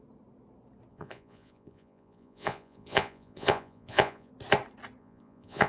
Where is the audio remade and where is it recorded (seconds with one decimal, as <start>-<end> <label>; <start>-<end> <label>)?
0.0-0.9 recorded; 0.9-4.3 remade; 4.3-5.0 recorded; 5.0-5.7 remade